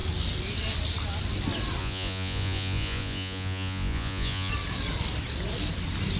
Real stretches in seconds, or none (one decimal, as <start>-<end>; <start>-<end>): 0.0-1.8; 4.5-6.2